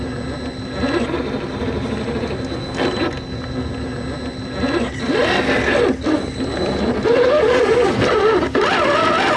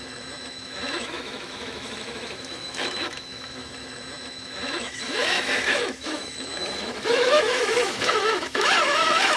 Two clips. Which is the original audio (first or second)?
first